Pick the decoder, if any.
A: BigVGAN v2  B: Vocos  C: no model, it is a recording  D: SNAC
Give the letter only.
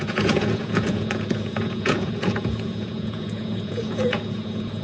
B